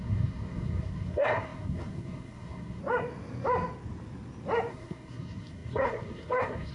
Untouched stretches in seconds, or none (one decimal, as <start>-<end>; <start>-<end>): 2.8-4.7